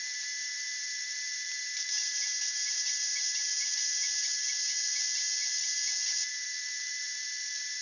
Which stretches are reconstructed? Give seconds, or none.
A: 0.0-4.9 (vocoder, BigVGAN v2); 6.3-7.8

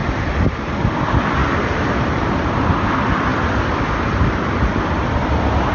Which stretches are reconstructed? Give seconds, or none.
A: 0.0-0.7 (vocoder, BigVGAN v2); 1.4-2.8